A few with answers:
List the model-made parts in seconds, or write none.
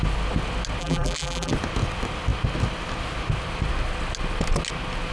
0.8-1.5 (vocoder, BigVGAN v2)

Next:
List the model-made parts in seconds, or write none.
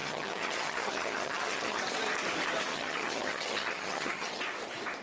0.0-1.8 (vocoder, HiFi-GAN); 2.7-4.4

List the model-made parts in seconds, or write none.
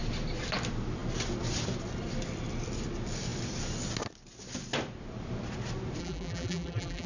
6.0-7.1 (vocoder, BigVGAN v2)